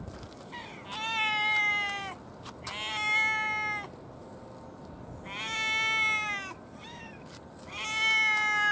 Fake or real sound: real